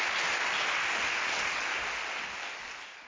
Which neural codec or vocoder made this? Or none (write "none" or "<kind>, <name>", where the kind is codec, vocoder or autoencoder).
none